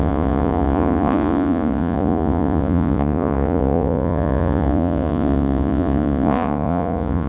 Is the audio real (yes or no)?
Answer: no